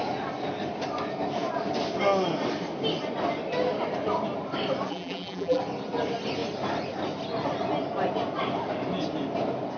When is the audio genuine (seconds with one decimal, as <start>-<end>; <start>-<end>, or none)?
0.0-4.9; 5.6-9.8